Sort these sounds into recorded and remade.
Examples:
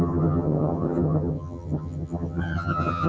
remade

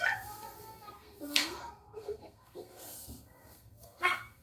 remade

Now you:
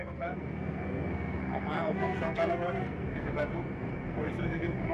remade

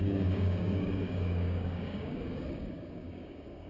remade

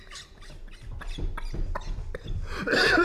recorded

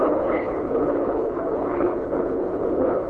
remade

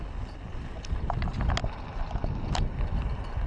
recorded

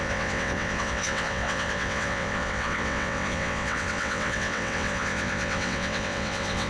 remade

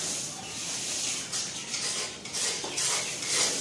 recorded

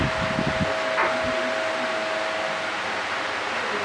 recorded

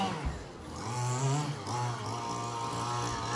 recorded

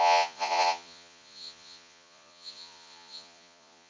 remade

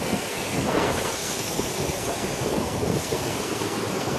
remade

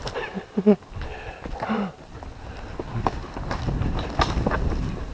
recorded